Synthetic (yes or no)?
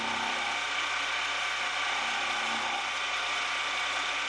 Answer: no